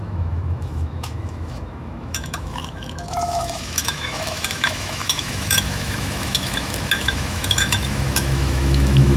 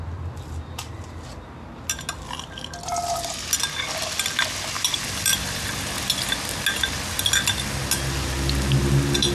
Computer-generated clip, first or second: first